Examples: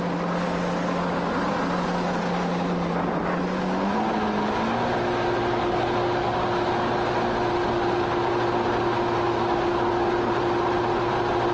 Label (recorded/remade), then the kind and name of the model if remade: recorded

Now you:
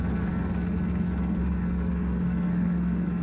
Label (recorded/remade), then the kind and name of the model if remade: remade, codec, SNAC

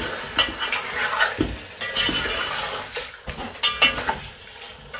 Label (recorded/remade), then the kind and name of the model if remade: recorded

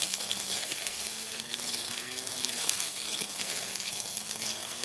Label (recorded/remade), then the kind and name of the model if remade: remade, codec, SNAC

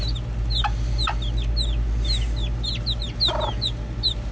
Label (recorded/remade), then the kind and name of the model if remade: recorded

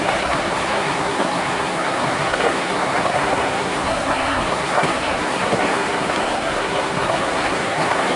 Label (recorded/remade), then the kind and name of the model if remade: remade, codec, SNAC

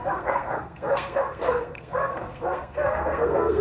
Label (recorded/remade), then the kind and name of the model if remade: remade, codec, SNAC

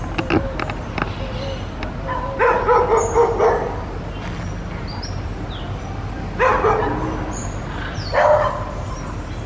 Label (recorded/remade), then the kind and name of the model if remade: recorded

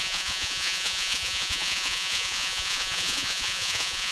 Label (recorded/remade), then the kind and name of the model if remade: remade, vocoder, Vocos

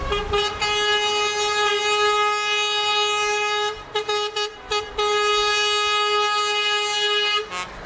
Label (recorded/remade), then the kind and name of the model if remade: recorded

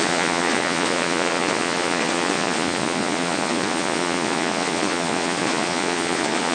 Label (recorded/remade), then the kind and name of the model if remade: remade, vocoder, Vocos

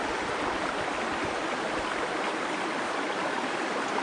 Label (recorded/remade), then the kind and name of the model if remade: recorded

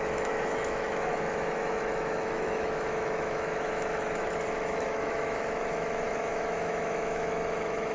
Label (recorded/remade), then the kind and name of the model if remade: remade, autoencoder, DAC-VAE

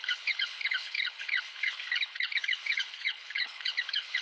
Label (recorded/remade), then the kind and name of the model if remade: remade, codec, HILCodec